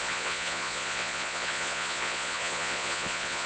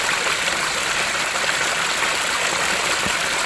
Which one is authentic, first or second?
second